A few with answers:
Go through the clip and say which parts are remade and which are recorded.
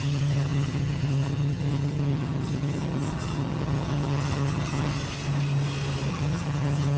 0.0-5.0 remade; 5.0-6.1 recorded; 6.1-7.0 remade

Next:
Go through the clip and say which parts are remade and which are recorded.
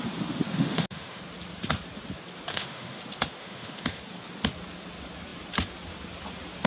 0.0-0.5 recorded; 0.5-1.2 remade; 1.2-2.5 recorded; 2.5-3.0 remade; 3.0-3.4 recorded; 3.4-4.0 remade; 4.0-6.7 recorded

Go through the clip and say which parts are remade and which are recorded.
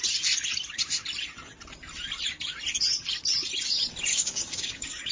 0.0-4.1 recorded; 4.1-5.1 remade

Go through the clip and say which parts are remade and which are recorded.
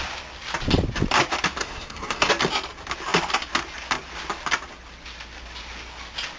0.0-1.6 recorded; 1.6-2.3 remade; 2.3-6.4 recorded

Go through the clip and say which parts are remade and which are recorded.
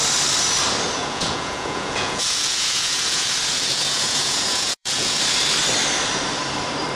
0.0-1.0 recorded; 1.0-5.2 remade; 5.2-7.0 recorded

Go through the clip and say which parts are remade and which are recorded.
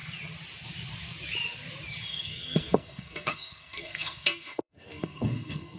0.0-2.1 recorded; 2.1-5.8 remade